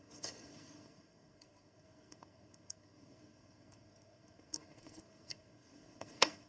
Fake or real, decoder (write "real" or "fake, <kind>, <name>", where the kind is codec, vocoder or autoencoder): fake, codec, SNAC